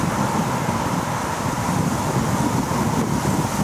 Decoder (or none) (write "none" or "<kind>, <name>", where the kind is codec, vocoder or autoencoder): none